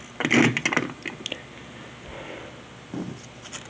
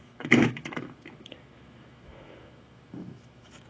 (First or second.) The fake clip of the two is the second